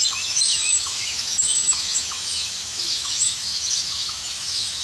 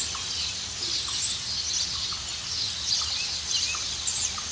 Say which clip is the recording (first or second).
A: second